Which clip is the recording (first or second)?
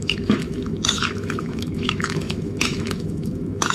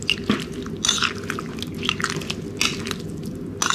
second